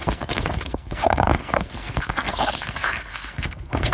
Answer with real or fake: fake